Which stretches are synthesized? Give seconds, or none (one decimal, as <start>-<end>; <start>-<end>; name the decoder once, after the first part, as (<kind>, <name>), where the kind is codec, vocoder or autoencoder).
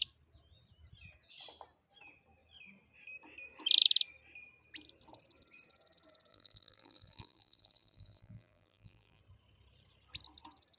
6.3-9.2 (vocoder, BigVGAN v2)